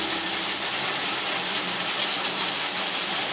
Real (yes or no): yes